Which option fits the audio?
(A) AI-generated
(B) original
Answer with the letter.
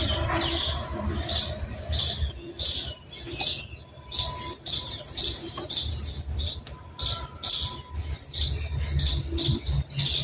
B